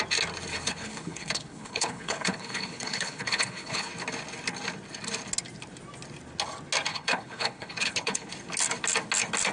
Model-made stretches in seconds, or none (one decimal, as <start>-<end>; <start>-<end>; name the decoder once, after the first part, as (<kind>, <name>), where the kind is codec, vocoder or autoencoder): 0.5-3.9 (codec, HILCodec); 6.9-8.3